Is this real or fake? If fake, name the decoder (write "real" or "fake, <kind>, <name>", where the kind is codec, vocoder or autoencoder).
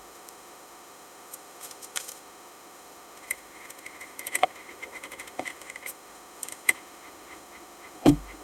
fake, autoencoder, DAC-VAE